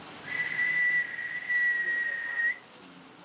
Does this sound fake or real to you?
real